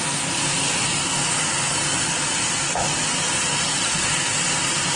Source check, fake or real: real